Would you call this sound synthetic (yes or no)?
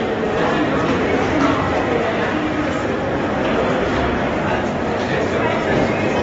no